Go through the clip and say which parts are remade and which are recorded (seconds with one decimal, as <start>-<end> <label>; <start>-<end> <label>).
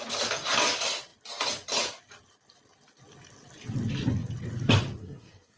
0.0-5.0 recorded; 5.0-5.6 remade